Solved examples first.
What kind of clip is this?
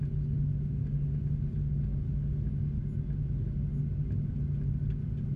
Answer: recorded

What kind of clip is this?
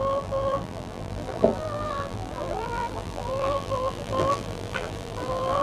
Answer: remade